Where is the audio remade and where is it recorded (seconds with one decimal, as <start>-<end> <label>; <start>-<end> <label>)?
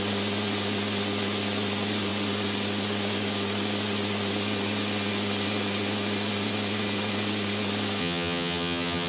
0.0-8.0 recorded; 8.0-9.1 remade